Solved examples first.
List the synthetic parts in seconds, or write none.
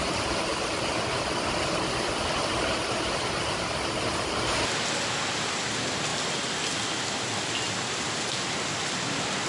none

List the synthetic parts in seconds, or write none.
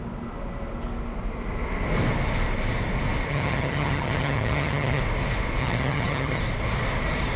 3.3-5.0 (vocoder, HiFi-GAN); 5.6-6.4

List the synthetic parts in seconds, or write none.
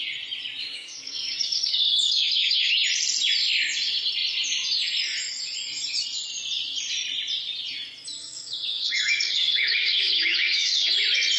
0.6-2.7 (codec, DAC); 8.2-11.0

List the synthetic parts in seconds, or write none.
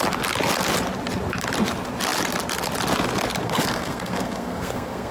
3.4-5.1 (codec, SNAC)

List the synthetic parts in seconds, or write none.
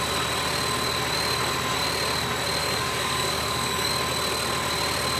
2.6-3.9 (codec, DAC)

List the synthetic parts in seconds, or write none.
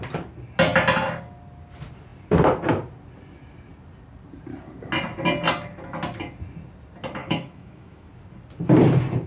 7.2-8.1 (autoencoder, DAC-VAE)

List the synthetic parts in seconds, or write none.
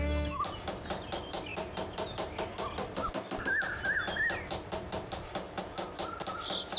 none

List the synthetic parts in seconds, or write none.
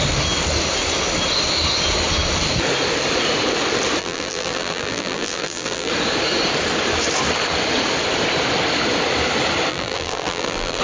4.0-5.9 (vocoder, BigVGAN v2); 9.7-10.8